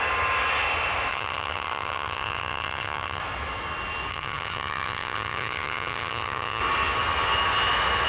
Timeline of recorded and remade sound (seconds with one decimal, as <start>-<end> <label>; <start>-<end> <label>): 0.0-1.1 recorded; 1.1-3.2 remade; 3.2-4.1 recorded; 4.1-6.6 remade; 6.6-8.1 recorded